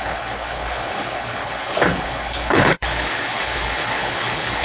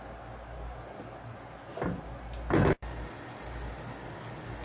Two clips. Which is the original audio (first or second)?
second